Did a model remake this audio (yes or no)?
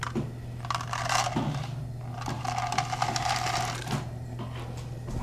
no